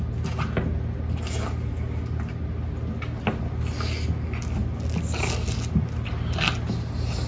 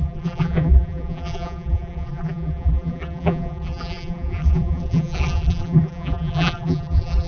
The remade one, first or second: second